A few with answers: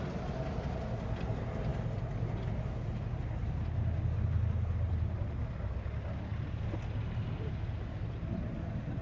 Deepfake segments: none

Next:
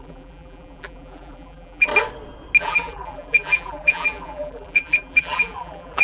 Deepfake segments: 0.0-1.9 (vocoder, BigVGAN v2); 2.6-6.0

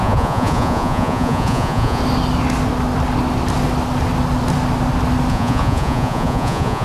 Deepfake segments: 0.0-2.0 (vocoder, Vocos); 5.3-6.8

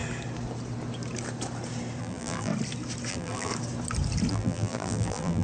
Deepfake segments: 2.0-2.5 (vocoder, BigVGAN v2); 3.1-3.5; 4.3-5.4

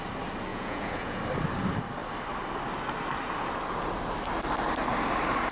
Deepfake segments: 0.5-1.2 (vocoder, Vocos)